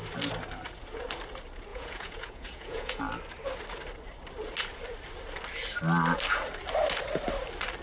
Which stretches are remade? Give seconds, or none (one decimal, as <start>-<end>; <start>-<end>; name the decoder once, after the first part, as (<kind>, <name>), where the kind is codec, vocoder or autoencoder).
1.7-3.0 (vocoder, Vocos)